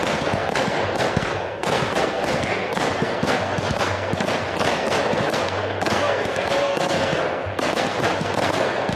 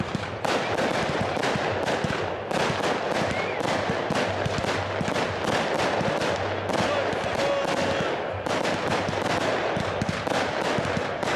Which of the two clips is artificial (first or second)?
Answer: first